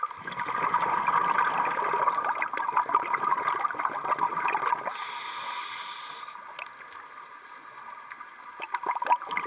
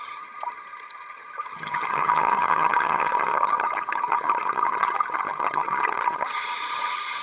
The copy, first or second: second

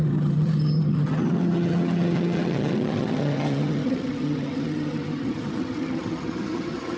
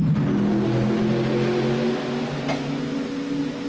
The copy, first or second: first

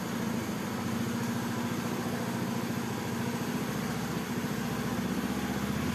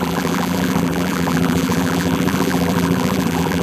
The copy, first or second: second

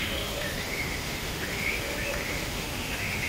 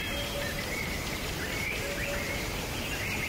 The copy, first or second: first